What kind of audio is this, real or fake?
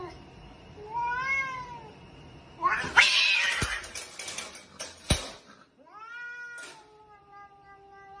real